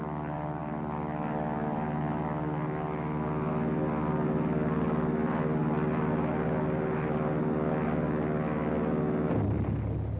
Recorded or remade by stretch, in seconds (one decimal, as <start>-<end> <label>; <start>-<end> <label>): 0.0-10.2 recorded